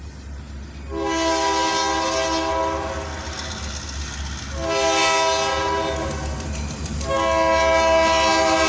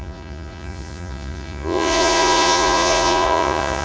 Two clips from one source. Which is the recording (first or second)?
first